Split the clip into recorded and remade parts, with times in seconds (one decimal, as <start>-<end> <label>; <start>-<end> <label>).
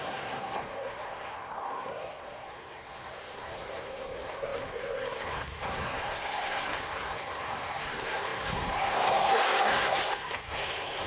0.0-11.1 remade